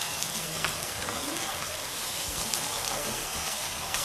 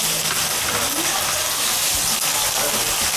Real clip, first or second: second